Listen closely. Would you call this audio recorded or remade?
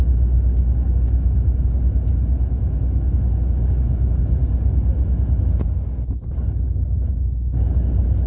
recorded